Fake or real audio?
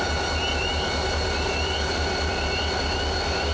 real